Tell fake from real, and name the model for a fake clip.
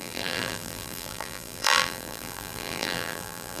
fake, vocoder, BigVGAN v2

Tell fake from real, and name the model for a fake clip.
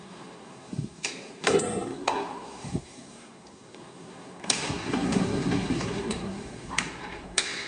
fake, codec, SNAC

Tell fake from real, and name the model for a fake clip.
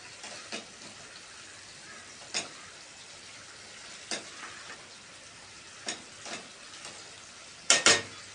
real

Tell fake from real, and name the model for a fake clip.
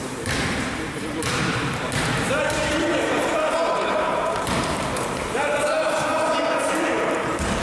fake, vocoder, BigVGAN v2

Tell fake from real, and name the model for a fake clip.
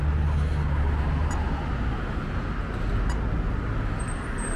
real